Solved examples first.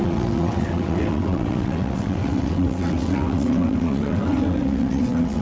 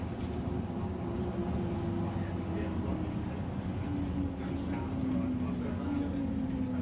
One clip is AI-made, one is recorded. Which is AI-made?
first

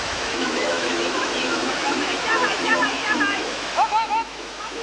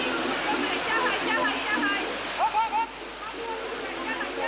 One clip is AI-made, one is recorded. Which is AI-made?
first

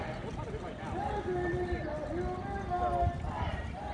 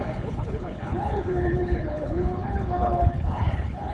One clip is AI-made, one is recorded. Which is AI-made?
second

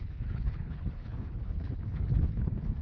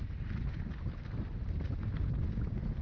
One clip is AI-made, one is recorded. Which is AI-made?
first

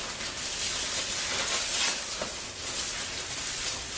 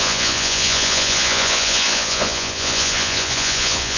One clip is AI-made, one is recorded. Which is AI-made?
second